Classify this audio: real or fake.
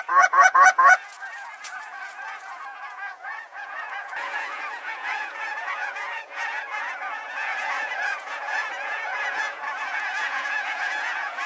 fake